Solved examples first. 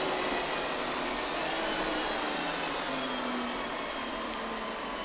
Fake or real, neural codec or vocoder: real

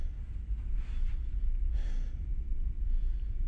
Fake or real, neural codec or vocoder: fake, vocoder, BigVGAN v2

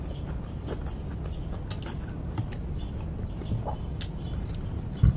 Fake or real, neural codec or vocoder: real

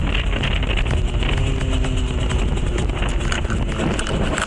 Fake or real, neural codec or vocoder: real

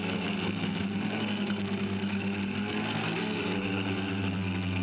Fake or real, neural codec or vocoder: fake, codec, SNAC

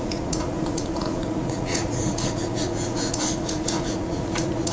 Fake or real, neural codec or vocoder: fake, vocoder, Vocos